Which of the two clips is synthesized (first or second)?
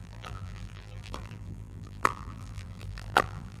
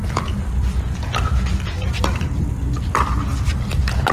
first